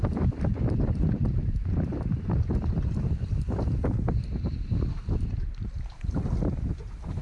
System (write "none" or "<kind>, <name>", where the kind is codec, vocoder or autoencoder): none